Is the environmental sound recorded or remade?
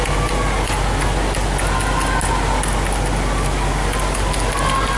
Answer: recorded